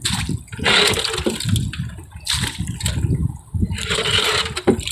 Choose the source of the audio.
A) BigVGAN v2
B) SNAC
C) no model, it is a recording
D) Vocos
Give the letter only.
C